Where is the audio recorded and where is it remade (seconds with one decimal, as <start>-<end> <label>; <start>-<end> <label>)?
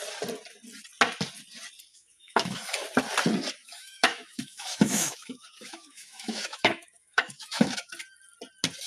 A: 0.0-1.9 recorded; 1.9-2.8 remade; 2.8-3.6 recorded; 3.6-7.9 remade; 7.9-8.9 recorded